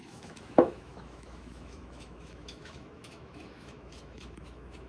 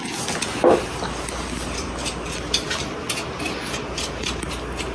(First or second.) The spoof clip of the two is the first